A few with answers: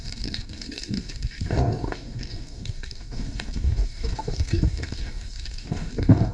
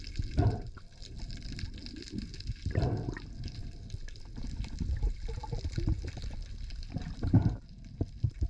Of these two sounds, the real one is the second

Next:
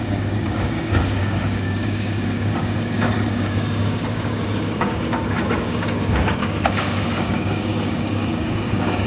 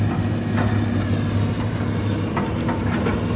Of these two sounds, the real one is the second